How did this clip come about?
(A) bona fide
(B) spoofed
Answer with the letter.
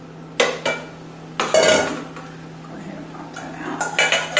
A